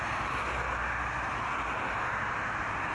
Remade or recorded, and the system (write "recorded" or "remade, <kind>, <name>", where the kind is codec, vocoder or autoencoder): recorded